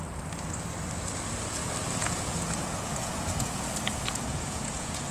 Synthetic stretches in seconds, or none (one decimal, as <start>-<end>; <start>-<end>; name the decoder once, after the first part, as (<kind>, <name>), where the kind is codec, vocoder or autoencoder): 2.0-5.1 (vocoder, Vocos)